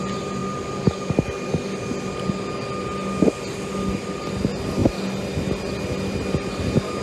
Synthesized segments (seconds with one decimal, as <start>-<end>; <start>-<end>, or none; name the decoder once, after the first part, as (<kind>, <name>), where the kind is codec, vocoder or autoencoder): none